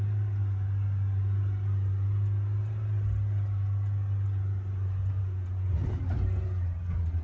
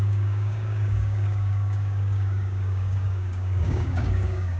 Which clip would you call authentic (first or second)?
first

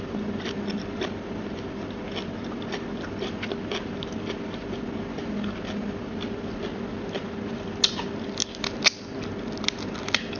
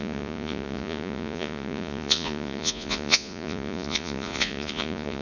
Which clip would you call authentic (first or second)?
first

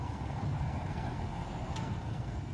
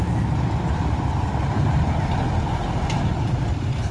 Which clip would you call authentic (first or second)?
second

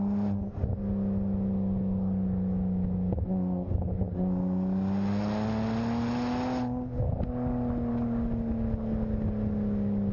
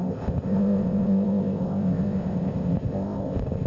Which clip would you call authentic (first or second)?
first